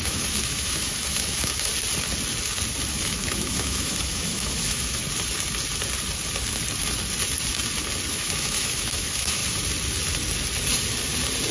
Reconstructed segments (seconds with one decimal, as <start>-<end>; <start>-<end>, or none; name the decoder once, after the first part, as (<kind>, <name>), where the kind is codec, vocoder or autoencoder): 0.0-1.7 (autoencoder, DAC-VAE); 2.9-5.0; 8.1-9.4